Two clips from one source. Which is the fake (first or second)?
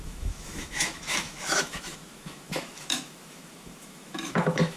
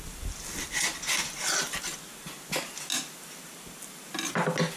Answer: first